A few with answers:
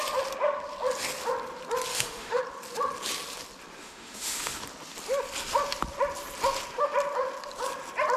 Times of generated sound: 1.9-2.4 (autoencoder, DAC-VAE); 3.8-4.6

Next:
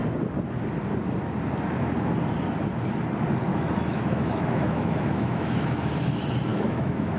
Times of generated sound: 3.5-5.9 (autoencoder, DAC-VAE); 6.5-7.2

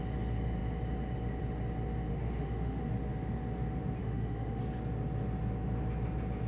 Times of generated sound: 2.1-2.8 (autoencoder, DAC-VAE); 4.0-4.6

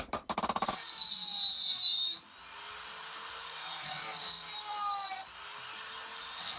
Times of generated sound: none

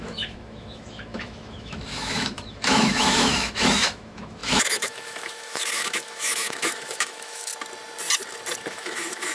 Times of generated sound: 0.0-7.5 (autoencoder, DAC-VAE); 8.7-9.3